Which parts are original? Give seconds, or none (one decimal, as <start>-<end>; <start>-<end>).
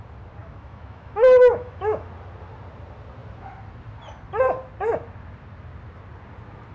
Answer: 0.0-0.4; 2.1-6.7